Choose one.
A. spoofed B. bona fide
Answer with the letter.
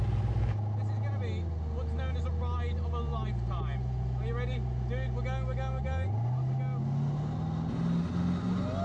B